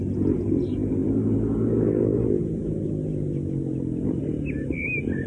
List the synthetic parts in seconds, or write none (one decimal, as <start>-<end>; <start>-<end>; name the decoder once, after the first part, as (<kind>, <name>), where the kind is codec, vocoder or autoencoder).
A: none